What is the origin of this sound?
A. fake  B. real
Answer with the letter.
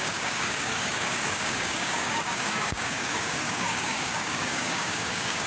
A